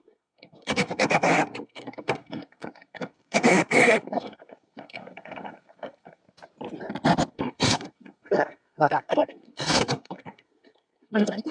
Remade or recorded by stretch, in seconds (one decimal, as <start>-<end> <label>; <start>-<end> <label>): 0.0-6.2 remade; 6.2-7.3 recorded; 7.3-11.5 remade